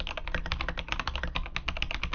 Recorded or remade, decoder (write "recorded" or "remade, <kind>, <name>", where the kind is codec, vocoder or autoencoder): recorded